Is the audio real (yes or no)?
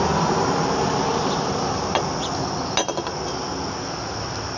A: yes